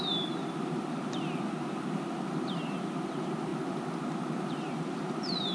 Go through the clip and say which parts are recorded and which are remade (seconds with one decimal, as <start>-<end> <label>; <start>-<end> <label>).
0.0-5.5 recorded